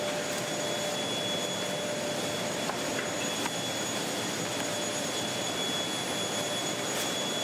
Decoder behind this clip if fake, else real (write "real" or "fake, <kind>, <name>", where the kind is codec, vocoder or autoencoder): real